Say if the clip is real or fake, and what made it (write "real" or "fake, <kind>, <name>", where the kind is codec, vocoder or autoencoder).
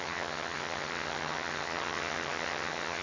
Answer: fake, vocoder, HiFi-GAN